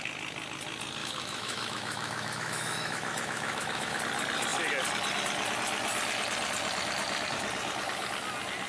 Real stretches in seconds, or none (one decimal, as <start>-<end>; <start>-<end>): 0.0-1.0; 4.0-8.7